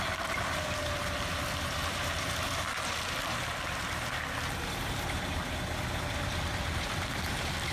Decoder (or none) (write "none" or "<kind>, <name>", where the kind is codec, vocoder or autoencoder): vocoder, BigVGAN v2